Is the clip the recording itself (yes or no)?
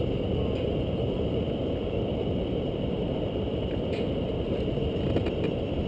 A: yes